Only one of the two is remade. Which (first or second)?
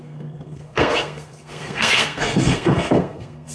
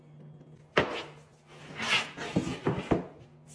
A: first